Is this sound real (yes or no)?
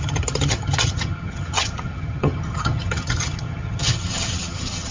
no